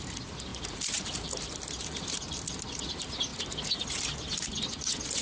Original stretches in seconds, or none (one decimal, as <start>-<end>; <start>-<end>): 0.0-0.5; 2.9-5.2

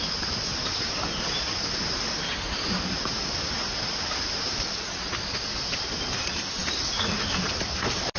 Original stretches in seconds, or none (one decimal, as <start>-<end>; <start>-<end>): 0.0-8.2

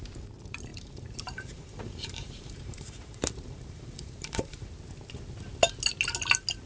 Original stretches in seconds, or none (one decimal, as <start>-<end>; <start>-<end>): 0.0-0.7; 4.7-6.7

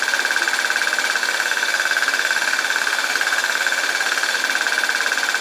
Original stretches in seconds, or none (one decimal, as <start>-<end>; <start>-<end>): 0.0-1.2; 4.4-5.4

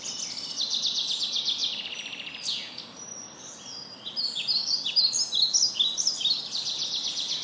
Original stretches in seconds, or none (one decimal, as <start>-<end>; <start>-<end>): 0.0-7.4

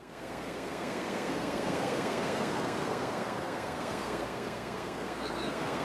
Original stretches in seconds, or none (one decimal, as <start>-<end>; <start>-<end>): none